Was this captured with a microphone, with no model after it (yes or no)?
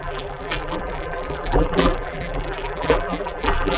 no